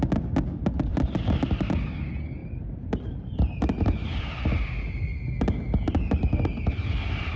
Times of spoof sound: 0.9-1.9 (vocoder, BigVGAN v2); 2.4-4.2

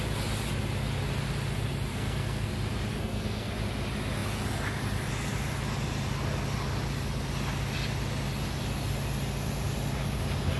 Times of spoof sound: 1.9-2.5 (codec, SNAC); 2.9-3.5

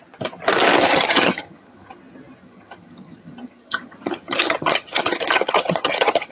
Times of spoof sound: 0.9-2.0 (vocoder, HiFi-GAN); 2.4-6.3

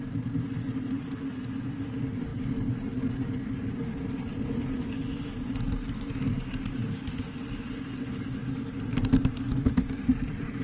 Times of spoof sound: none

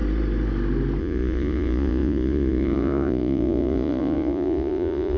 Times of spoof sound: 1.0-5.2 (vocoder, Vocos)

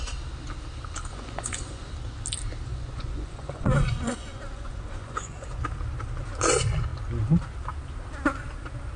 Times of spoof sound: 1.1-1.9 (vocoder, Vocos); 2.7-5.6